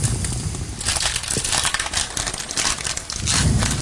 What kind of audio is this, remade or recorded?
recorded